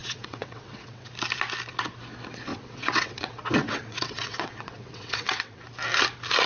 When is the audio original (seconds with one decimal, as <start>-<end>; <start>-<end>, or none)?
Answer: 1.1-2.5; 5.6-6.5